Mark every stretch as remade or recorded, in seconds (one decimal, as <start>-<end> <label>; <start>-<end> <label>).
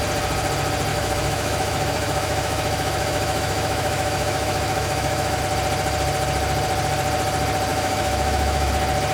0.0-0.9 recorded; 0.9-5.4 remade; 5.4-7.7 recorded; 7.7-8.7 remade; 8.7-9.1 recorded